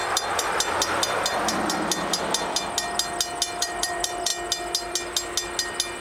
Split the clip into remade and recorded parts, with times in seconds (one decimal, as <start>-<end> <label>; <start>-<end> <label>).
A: 0.0-3.6 recorded; 3.6-4.3 remade; 4.3-6.0 recorded